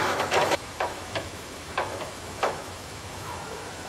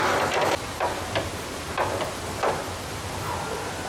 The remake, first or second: first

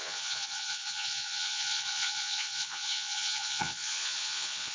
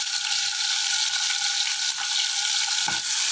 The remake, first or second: first